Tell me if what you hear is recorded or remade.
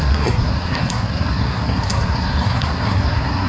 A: remade